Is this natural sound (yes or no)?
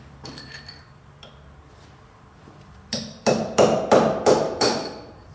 no